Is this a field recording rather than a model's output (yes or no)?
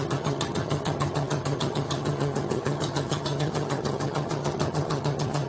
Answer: no